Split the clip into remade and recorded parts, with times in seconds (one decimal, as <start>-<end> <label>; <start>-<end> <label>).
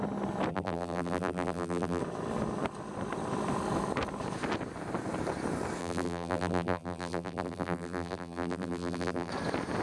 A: 0.0-0.5 recorded; 0.5-2.0 remade; 2.0-5.8 recorded; 5.8-9.3 remade; 9.3-9.8 recorded